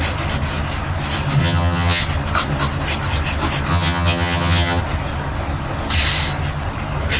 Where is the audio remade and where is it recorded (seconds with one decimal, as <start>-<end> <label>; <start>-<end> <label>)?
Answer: 0.0-1.4 recorded; 1.4-2.0 remade; 2.0-3.7 recorded; 3.7-4.8 remade; 4.8-7.2 recorded